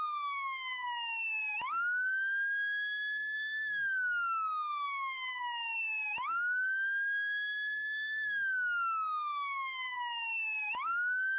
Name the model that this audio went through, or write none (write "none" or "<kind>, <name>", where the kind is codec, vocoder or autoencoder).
autoencoder, DAC-VAE